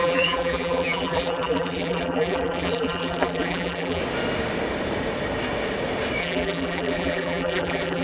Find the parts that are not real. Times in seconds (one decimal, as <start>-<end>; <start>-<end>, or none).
0.0-4.0; 6.2-8.0